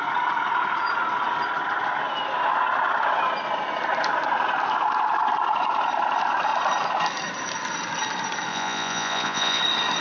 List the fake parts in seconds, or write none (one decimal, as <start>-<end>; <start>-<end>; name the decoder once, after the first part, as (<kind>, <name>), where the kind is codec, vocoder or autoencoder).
8.5-9.6 (vocoder, Vocos)

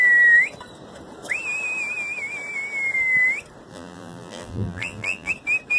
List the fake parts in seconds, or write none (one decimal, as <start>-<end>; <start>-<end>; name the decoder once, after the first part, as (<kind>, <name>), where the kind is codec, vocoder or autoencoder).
3.7-5.3 (vocoder, BigVGAN v2)